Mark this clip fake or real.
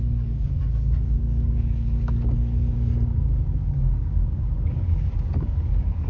fake